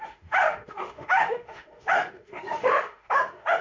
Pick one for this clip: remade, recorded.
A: remade